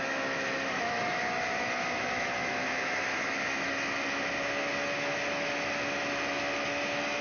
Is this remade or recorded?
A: remade